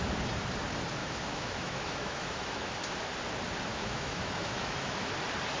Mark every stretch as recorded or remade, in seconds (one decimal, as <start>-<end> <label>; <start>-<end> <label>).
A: 0.0-1.0 recorded; 1.0-2.7 remade; 2.7-3.7 recorded; 3.7-5.1 remade; 5.1-5.6 recorded